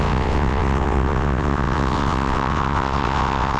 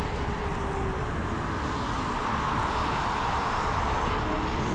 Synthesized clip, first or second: first